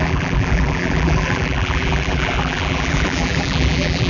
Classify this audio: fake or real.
fake